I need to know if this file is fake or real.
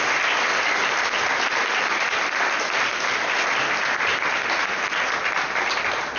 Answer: real